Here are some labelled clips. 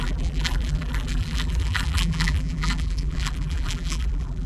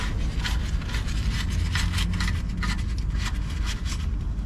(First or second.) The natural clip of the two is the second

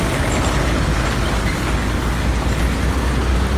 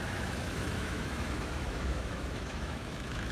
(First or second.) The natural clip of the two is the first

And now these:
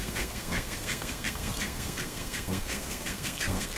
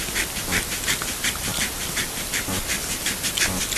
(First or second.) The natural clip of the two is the second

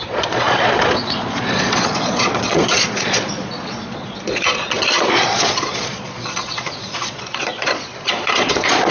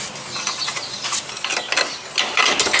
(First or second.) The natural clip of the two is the second